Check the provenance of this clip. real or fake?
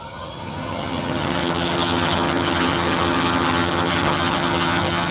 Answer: fake